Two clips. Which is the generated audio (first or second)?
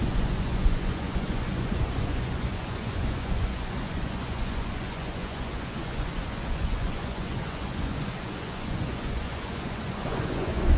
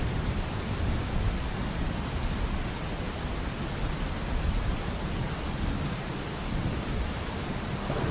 first